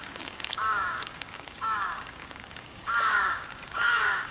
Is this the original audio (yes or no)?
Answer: no